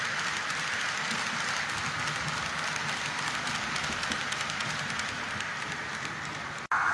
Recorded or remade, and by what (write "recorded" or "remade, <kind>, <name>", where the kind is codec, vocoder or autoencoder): recorded